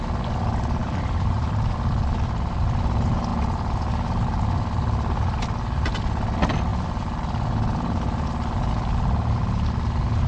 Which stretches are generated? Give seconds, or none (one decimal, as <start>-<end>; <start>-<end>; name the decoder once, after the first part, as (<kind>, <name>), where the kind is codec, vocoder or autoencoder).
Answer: 0.8-1.7 (vocoder, BigVGAN v2)